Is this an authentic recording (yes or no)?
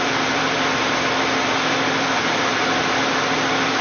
yes